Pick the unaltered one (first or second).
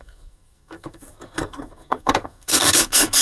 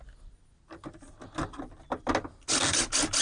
second